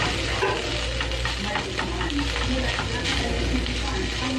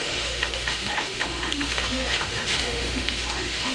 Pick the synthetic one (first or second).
second